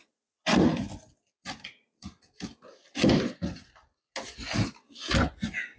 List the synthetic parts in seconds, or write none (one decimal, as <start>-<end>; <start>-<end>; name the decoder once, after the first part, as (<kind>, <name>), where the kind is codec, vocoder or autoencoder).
none